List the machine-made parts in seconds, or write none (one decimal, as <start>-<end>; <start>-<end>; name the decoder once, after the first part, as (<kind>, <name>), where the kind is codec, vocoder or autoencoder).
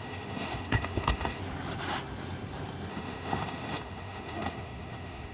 0.0-1.4 (autoencoder, DAC-VAE); 2.9-5.3